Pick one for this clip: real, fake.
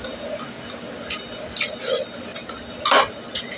real